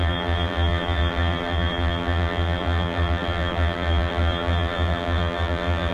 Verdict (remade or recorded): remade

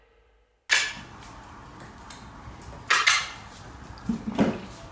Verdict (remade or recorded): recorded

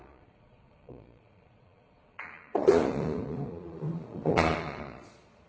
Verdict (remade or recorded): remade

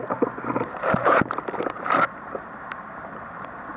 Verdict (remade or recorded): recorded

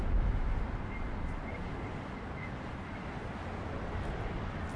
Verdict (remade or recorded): recorded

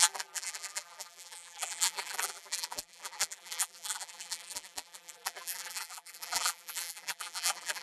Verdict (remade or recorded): remade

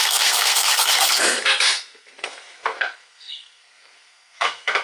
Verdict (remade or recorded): remade